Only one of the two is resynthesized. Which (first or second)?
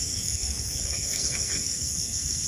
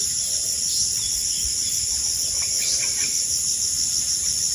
first